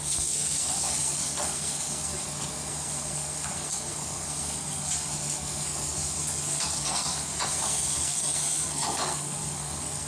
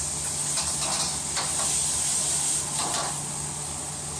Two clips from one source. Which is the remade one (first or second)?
first